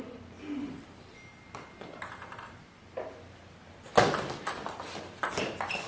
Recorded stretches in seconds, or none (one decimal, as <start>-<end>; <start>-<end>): 0.0-5.9